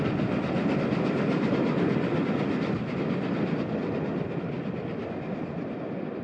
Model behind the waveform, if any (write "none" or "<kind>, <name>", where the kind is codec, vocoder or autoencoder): none